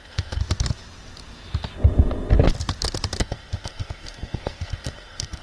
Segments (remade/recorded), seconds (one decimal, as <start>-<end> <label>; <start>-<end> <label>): 0.0-0.4 remade; 0.4-3.2 recorded; 3.2-5.4 remade